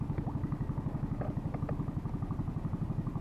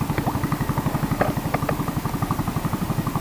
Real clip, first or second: first